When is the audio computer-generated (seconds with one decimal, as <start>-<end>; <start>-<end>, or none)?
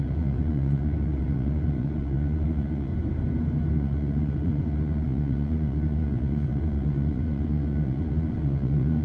0.0-2.9; 3.7-9.0